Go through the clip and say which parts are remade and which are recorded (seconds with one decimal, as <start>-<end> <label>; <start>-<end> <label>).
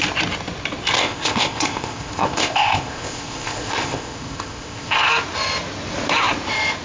0.0-1.0 recorded; 1.0-5.1 remade; 5.1-6.8 recorded